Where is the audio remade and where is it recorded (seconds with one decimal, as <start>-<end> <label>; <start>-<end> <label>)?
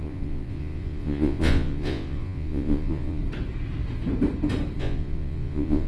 0.0-3.2 remade; 3.2-4.8 recorded; 4.8-5.9 remade